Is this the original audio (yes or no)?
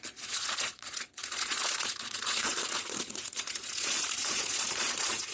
no